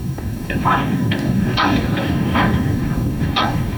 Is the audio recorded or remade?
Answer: remade